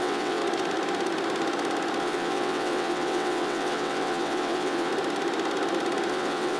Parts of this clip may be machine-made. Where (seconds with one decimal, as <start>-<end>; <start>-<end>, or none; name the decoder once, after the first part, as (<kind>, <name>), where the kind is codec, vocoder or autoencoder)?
0.0-0.4 (vocoder, WaveNeXt); 2.0-4.9; 6.1-6.6